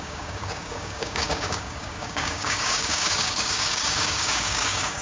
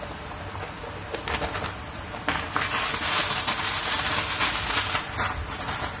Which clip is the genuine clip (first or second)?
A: second